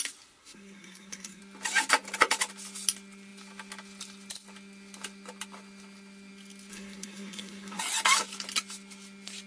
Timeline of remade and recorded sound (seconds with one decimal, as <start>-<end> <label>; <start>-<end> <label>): 0.0-0.4 recorded; 0.4-1.4 remade; 1.4-6.7 recorded; 6.7-7.8 remade; 7.8-9.5 recorded